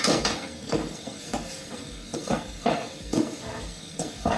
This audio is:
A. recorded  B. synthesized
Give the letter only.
B